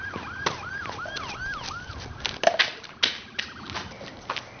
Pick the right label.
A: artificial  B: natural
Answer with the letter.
B